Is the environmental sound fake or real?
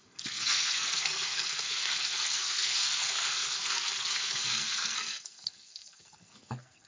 fake